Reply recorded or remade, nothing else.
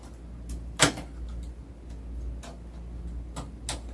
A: recorded